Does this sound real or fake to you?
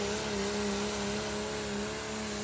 real